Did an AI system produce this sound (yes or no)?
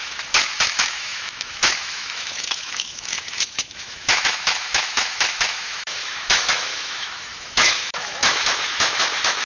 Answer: yes